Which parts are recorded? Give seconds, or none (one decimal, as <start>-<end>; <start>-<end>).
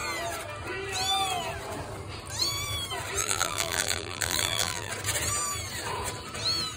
0.0-3.2; 4.9-6.8